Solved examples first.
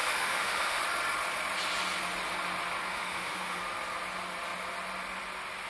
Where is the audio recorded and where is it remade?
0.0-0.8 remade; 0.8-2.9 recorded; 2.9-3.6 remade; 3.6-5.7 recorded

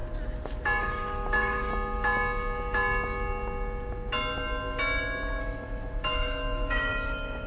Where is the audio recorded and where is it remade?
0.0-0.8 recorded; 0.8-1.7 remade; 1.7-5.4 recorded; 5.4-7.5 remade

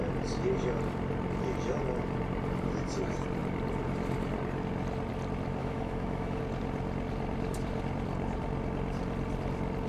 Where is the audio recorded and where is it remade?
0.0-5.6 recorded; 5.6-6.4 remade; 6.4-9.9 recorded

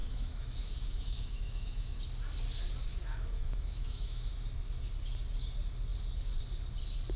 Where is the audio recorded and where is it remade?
0.0-2.0 remade; 2.0-2.9 recorded; 2.9-4.3 remade; 4.3-7.2 recorded

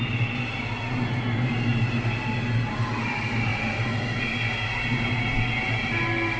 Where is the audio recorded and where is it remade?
0.0-6.4 recorded

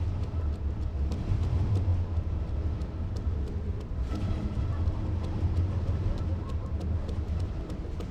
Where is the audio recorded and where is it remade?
0.0-8.1 recorded

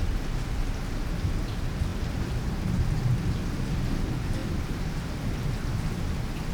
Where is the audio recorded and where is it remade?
0.0-6.5 recorded